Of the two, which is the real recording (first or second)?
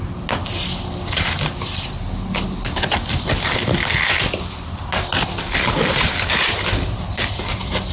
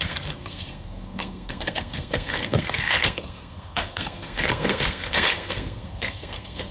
first